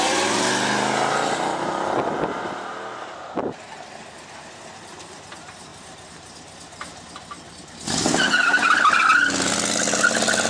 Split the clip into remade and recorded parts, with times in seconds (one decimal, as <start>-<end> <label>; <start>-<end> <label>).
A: 0.0-10.5 recorded

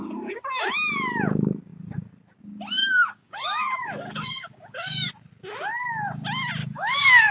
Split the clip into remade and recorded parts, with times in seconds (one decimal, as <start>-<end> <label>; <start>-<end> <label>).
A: 0.0-2.8 recorded; 2.8-5.1 remade; 5.1-6.6 recorded; 6.6-7.3 remade

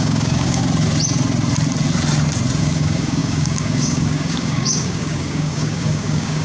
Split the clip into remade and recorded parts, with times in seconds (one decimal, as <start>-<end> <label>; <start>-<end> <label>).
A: 0.0-0.6 remade; 0.6-2.6 recorded; 2.6-6.4 remade

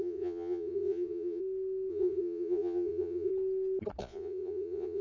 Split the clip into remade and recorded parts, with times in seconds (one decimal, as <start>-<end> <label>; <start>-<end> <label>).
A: 0.0-1.4 remade; 1.4-1.9 recorded; 1.9-3.3 remade; 3.3-4.0 recorded; 4.0-5.0 remade

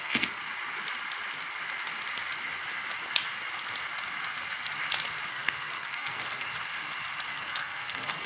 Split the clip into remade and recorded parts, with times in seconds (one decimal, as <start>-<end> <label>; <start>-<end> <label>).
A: 0.0-0.4 remade; 0.4-5.3 recorded; 5.3-6.5 remade; 6.5-7.3 recorded; 7.3-8.3 remade

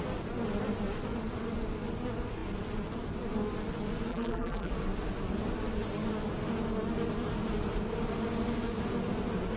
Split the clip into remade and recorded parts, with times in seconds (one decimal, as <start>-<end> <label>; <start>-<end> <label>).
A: 0.0-4.1 recorded; 4.1-4.7 remade; 4.7-9.6 recorded